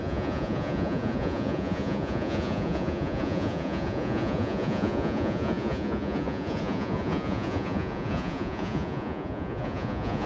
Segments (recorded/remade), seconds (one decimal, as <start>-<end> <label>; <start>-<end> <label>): 0.0-10.3 remade